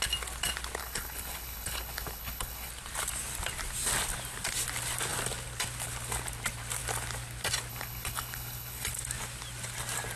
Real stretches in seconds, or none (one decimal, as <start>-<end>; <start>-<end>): 0.0-0.8; 2.7-7.7; 8.9-10.2